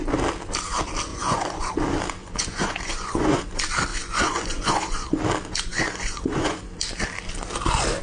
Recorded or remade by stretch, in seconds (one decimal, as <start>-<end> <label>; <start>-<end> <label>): 0.0-1.1 recorded; 1.1-1.7 remade; 1.7-2.2 recorded; 2.2-3.4 remade; 3.4-3.9 recorded; 3.9-5.2 remade; 5.2-5.7 recorded; 5.7-6.8 remade; 6.8-8.0 recorded